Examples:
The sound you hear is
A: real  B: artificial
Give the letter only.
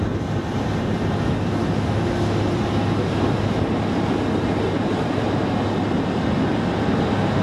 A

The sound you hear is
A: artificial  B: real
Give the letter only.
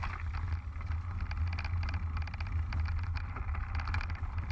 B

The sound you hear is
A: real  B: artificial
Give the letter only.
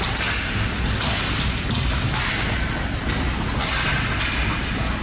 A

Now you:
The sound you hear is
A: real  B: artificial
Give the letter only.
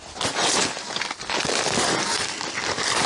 A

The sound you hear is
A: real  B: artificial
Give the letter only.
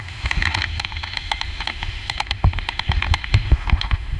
B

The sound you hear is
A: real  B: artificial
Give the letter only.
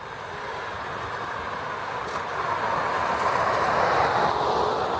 A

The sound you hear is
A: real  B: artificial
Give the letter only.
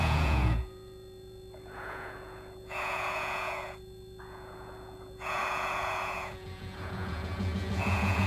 B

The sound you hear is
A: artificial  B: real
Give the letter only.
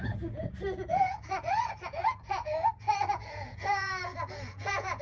A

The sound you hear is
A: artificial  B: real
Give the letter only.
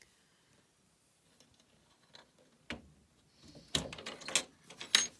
B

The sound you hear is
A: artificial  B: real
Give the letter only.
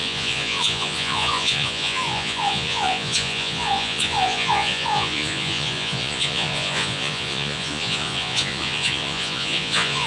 A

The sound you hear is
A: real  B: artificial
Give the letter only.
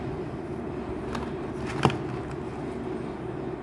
A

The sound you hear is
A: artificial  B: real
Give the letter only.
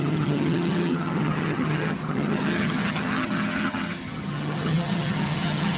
A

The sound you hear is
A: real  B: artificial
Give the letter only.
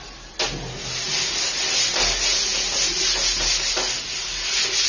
A